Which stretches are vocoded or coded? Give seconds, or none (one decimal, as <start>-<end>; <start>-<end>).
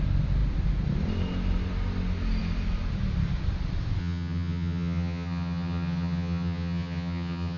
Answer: 4.0-7.6